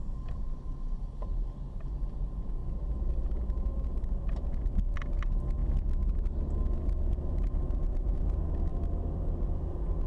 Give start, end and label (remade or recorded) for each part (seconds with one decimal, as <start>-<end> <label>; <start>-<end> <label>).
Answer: 0.0-10.1 recorded